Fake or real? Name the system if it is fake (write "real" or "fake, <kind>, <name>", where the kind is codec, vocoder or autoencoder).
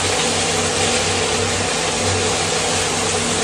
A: real